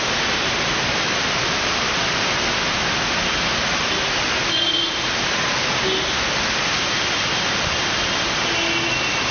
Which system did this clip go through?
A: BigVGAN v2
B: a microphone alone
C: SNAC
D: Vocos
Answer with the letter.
B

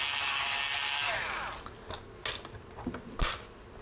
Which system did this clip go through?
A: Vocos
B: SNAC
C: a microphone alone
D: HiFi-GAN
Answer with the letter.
C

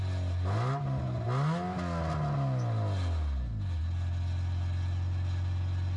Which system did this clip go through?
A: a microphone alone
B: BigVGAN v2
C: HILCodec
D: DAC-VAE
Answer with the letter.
A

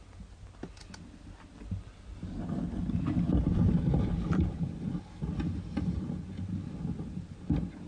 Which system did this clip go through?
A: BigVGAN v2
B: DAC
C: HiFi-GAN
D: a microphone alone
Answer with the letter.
D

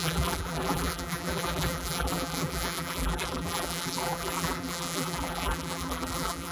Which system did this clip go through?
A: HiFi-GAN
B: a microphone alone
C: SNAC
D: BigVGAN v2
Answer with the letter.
D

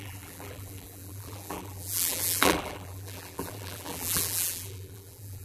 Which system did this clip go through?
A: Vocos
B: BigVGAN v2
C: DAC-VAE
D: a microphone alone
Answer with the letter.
B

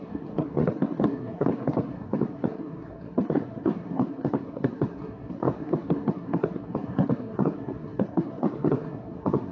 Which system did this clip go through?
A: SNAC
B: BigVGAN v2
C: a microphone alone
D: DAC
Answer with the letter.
A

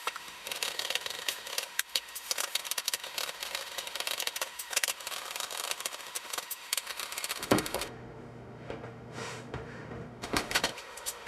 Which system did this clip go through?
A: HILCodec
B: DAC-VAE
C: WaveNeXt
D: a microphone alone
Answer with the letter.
B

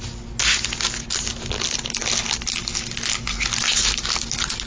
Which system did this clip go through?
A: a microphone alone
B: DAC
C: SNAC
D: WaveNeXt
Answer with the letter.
A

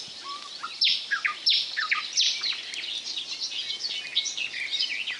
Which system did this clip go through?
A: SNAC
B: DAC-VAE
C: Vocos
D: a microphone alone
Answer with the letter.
D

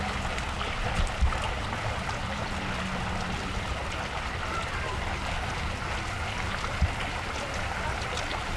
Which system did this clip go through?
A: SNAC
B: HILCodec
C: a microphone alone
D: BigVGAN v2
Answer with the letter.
C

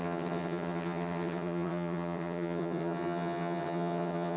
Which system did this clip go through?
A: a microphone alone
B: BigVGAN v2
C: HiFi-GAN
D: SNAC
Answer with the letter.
C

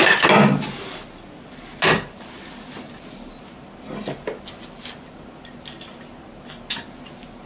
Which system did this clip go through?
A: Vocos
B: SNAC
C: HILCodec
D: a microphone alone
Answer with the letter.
D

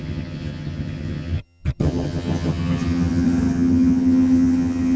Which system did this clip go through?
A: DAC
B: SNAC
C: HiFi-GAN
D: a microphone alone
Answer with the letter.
C